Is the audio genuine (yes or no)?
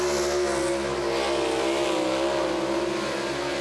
yes